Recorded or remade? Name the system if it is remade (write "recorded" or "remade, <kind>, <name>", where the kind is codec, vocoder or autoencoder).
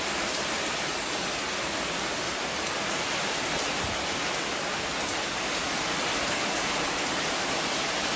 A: recorded